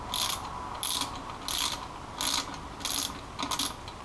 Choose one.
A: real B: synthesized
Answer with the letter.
A